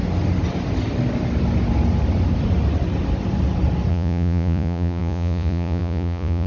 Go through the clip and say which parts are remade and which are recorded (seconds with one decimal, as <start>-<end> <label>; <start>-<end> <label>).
0.0-3.9 recorded; 3.9-6.5 remade